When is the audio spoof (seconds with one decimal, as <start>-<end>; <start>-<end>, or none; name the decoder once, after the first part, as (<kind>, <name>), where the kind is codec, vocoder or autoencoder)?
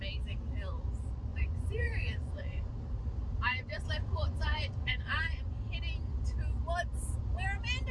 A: 1.3-2.7 (vocoder, Vocos); 3.5-5.5